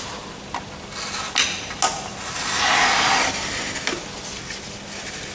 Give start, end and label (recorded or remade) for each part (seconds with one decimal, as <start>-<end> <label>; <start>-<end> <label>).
0.0-5.3 recorded